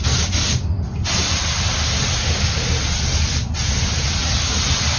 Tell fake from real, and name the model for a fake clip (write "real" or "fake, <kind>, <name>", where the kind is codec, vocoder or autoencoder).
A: real